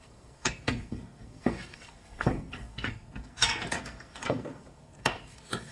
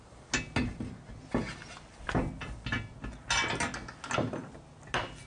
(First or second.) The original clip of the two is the second